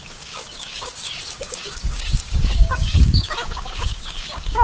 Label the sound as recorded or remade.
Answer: remade